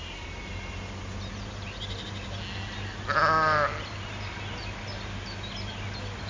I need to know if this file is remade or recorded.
recorded